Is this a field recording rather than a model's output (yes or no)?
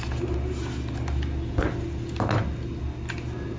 yes